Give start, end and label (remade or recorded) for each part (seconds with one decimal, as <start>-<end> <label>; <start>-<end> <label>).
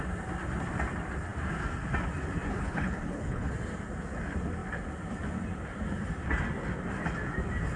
0.0-2.5 recorded; 2.5-3.5 remade; 3.5-7.8 recorded